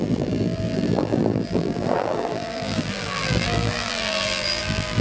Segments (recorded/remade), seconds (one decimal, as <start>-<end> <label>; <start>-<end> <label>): 0.0-5.0 remade